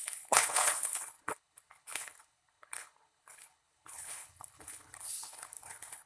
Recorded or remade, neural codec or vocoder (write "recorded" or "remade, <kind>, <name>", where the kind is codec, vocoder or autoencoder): remade, codec, HILCodec